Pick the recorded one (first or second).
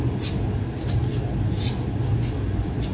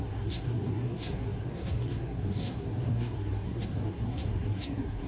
first